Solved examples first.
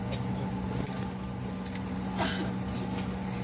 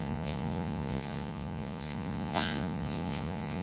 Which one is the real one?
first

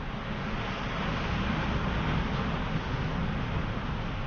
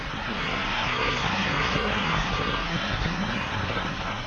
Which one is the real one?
first